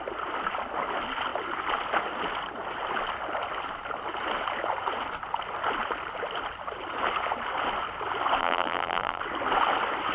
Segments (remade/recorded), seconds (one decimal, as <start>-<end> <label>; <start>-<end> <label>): 0.0-8.4 recorded; 8.4-9.2 remade; 9.2-10.1 recorded